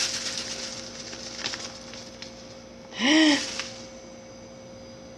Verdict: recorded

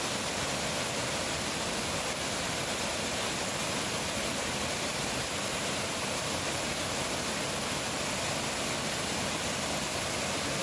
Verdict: recorded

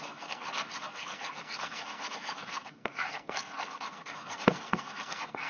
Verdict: remade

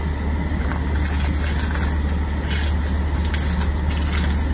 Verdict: recorded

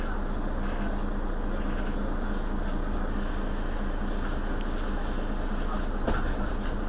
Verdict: recorded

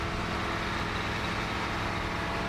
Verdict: recorded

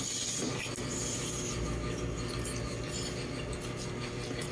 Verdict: recorded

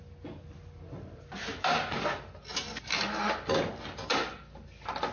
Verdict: recorded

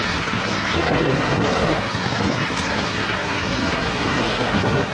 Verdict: remade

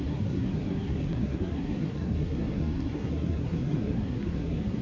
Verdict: remade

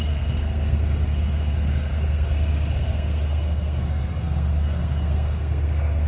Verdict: remade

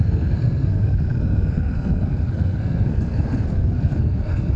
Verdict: remade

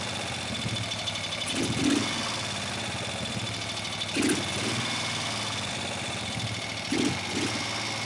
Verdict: recorded